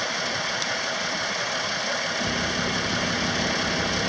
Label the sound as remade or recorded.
recorded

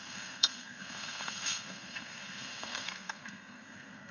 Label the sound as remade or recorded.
remade